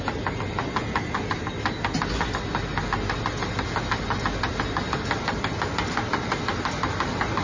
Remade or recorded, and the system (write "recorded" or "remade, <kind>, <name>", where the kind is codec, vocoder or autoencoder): recorded